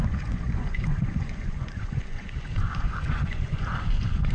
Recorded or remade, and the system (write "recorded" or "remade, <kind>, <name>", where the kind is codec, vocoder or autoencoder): remade, vocoder, Vocos